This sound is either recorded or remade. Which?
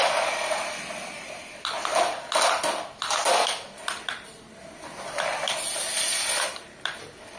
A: recorded